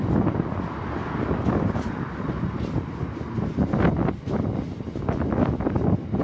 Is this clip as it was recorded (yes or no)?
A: yes